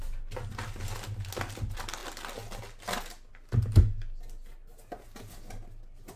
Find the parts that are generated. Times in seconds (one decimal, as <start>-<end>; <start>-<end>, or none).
none